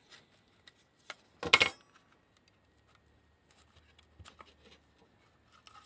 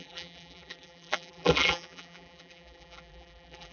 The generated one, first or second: second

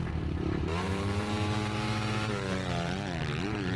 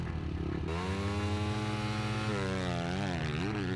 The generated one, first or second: first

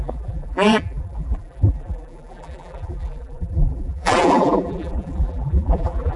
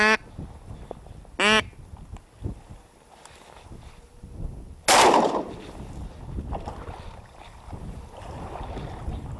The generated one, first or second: first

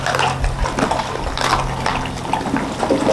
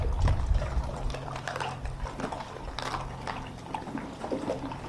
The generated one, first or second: second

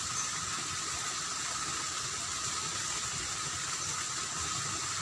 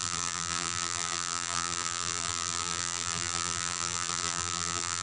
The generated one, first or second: second